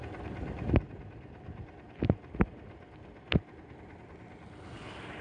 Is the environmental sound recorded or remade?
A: recorded